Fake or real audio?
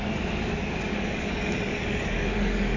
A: fake